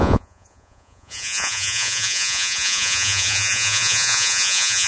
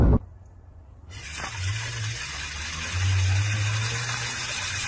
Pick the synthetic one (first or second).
first